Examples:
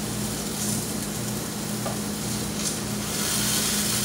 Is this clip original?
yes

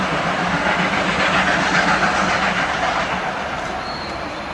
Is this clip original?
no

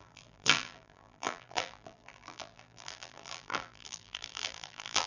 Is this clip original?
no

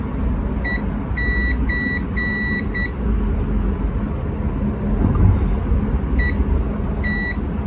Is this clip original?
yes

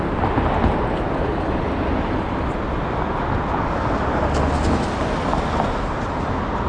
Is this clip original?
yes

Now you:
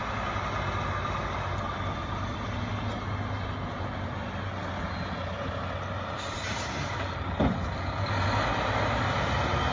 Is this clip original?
yes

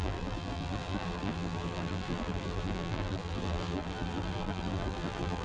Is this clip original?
no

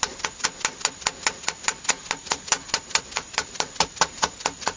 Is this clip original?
no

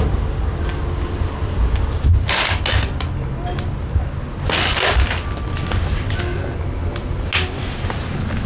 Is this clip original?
yes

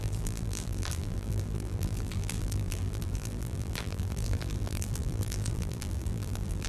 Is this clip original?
no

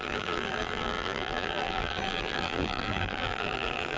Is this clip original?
no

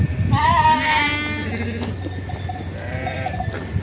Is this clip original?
yes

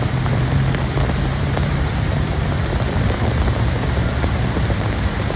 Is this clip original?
no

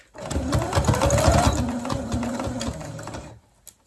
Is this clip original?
yes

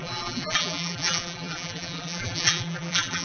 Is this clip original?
no